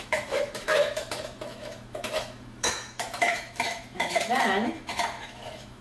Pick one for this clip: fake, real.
fake